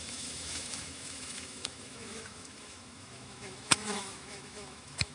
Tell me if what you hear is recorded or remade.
remade